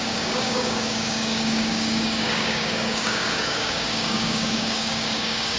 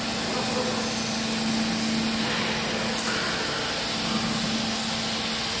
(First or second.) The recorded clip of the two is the second